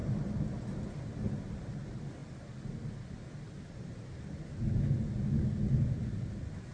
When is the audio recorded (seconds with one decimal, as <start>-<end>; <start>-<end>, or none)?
0.0-6.7